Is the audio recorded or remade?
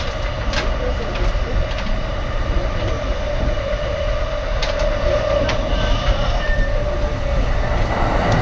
recorded